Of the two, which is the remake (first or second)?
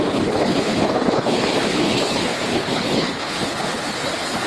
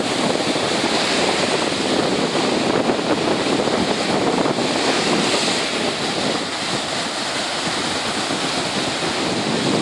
first